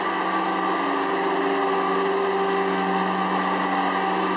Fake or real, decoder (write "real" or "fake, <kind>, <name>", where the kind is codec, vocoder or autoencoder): real